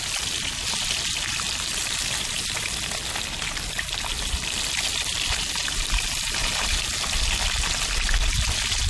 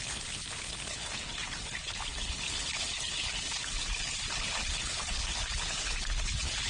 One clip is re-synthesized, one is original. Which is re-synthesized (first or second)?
second